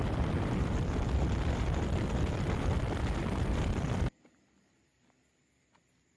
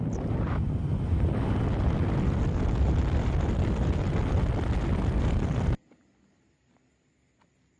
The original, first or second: second